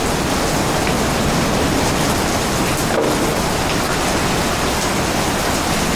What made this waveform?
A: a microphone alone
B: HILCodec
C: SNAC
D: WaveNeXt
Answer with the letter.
A